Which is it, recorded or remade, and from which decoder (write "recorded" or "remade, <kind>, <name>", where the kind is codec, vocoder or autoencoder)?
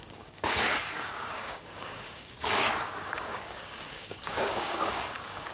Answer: remade, codec, DAC